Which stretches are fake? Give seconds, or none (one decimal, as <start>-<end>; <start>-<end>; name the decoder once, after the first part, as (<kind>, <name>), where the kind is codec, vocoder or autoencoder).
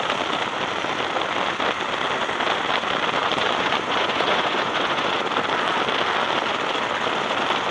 3.2-5.2 (vocoder, Vocos)